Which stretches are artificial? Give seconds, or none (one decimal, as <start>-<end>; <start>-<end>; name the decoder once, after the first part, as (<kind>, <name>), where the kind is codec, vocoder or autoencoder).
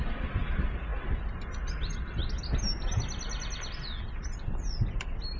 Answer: none